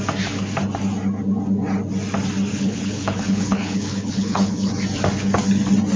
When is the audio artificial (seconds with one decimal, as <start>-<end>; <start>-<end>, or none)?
2.5-4.7